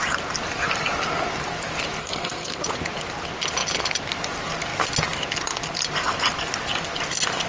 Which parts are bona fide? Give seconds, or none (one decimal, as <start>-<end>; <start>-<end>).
0.0-2.0; 2.6-7.5